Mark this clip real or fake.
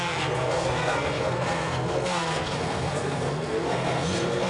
fake